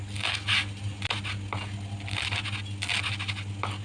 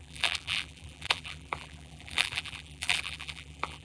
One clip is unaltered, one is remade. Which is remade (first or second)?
second